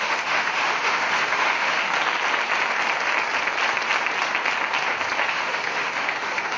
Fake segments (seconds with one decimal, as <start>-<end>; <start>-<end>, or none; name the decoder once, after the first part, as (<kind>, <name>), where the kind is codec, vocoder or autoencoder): 0.0-1.8 (autoencoder, DAC-VAE); 5.3-6.6